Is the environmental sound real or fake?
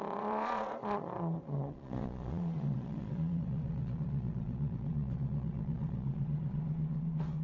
fake